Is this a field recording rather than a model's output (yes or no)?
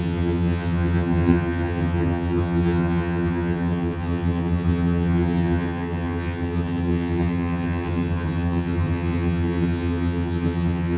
no